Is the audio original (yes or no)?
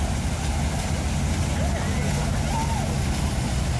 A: yes